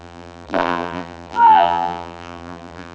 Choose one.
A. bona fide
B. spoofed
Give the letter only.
B